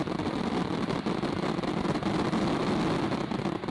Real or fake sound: real